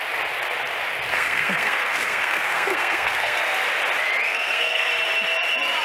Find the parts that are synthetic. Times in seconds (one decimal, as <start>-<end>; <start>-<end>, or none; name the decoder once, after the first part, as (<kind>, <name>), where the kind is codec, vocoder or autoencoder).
1.1-3.4 (codec, SNAC); 4.3-4.9